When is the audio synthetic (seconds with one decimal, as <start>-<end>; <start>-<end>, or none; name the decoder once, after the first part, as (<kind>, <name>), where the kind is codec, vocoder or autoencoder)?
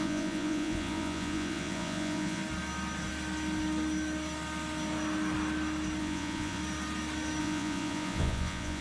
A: 0.0-2.4 (vocoder, Vocos); 6.0-6.6; 7.4-8.8